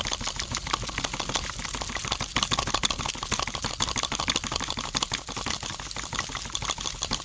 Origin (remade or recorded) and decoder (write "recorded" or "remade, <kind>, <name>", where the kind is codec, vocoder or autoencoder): recorded